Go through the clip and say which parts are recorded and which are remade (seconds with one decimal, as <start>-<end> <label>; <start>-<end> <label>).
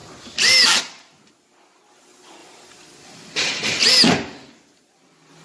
0.0-2.4 recorded; 2.4-3.9 remade; 3.9-5.4 recorded